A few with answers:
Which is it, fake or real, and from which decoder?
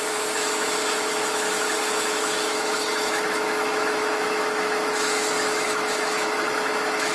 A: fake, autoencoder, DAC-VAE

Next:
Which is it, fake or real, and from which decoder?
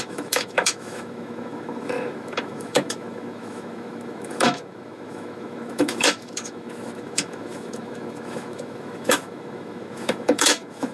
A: fake, autoencoder, DAC-VAE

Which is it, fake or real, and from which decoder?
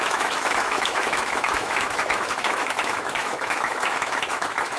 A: fake, autoencoder, DAC-VAE